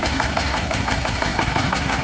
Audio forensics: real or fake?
fake